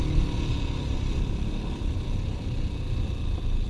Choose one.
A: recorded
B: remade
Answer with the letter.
A